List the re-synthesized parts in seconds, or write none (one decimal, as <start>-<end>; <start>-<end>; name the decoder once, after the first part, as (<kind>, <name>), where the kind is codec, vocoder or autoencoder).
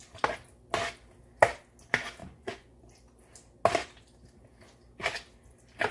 2.2-2.8 (vocoder, Vocos)